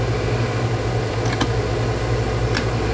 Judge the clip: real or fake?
real